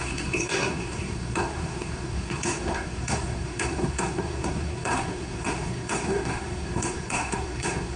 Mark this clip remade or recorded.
remade